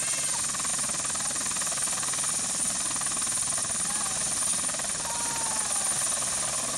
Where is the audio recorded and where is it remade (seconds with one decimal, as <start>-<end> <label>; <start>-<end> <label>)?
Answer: 0.0-6.8 remade